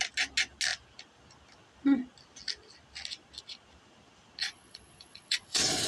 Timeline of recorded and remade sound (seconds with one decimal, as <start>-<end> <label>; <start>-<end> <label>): 0.0-4.4 recorded; 4.4-5.9 remade